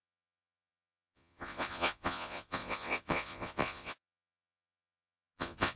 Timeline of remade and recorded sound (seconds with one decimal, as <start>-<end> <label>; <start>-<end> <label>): 0.0-5.8 remade